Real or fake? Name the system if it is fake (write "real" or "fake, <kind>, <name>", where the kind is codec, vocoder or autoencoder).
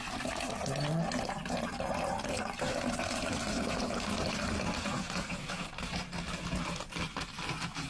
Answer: real